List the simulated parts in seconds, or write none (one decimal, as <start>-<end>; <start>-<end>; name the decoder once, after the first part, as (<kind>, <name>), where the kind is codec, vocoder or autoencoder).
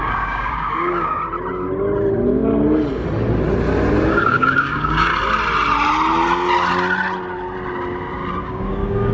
0.0-1.2 (codec, DAC); 4.1-5.1; 8.4-9.1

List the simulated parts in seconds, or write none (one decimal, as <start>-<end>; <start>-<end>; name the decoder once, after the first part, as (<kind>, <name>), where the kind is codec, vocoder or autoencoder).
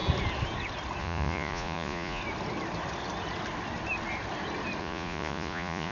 1.0-2.2 (vocoder, Vocos); 4.8-5.9